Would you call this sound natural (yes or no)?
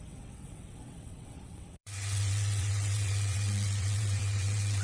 no